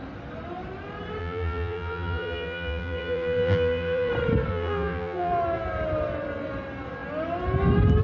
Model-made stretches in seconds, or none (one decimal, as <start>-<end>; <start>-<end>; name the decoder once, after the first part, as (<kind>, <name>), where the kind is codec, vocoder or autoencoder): 1.2-4.1 (vocoder, BigVGAN v2); 4.5-5.3